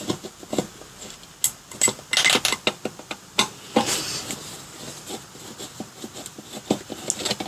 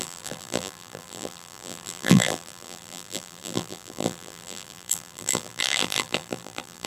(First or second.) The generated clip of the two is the second